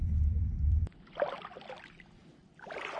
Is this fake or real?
fake